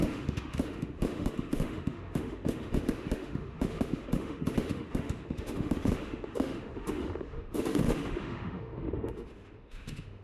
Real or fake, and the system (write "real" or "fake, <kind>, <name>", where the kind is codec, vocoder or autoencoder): fake, autoencoder, DAC-VAE